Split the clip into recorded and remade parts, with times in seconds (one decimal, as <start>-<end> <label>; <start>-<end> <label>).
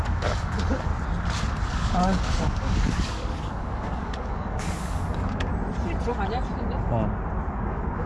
0.0-0.9 remade; 0.9-1.7 recorded; 1.7-5.5 remade; 5.5-7.5 recorded; 7.5-8.1 remade